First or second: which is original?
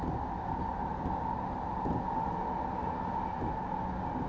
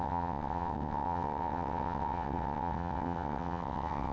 first